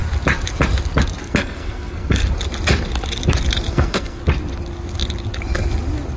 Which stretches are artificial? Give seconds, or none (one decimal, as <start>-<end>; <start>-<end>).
1.2-2.2; 3.7-4.2